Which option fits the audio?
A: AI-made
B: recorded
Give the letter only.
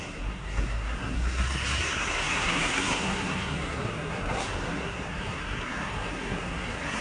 A